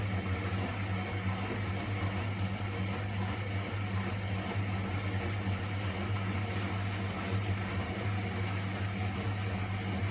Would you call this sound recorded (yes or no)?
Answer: yes